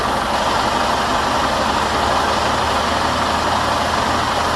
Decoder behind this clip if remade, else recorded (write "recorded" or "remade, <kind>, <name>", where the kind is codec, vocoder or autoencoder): recorded